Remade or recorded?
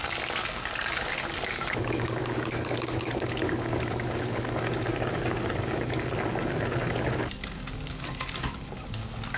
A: remade